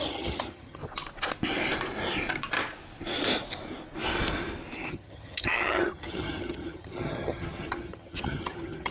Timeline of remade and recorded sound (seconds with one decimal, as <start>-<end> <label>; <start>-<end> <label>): 0.0-0.8 remade; 0.8-4.9 recorded; 4.9-8.9 remade